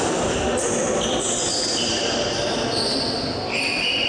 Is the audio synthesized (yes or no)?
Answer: no